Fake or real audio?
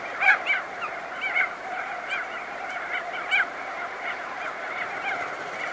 fake